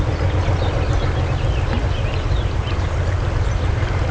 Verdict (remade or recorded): recorded